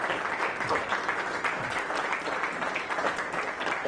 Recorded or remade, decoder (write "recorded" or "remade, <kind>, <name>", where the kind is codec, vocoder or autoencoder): recorded